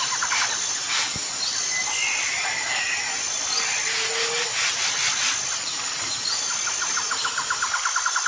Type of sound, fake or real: real